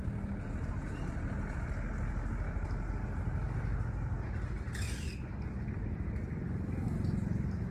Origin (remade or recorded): recorded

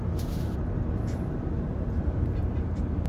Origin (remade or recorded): recorded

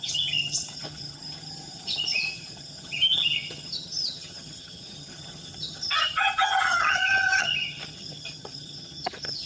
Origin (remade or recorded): remade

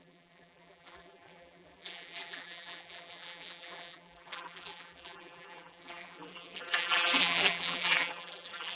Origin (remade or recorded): remade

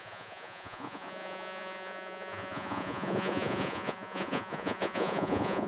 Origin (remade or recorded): remade